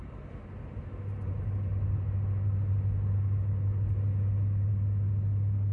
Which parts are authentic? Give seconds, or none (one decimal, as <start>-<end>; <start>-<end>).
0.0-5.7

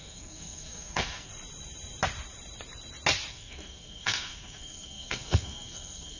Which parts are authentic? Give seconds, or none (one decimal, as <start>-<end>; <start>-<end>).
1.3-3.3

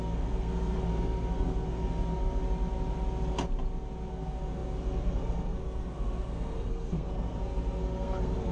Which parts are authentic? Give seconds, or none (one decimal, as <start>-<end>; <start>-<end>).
2.4-4.1

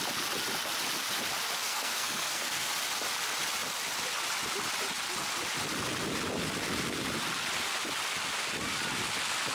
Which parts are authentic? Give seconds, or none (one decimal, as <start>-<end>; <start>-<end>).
0.0-1.6; 2.7-9.5

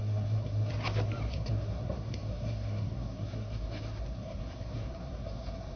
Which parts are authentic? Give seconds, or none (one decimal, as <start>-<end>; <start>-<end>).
0.7-1.3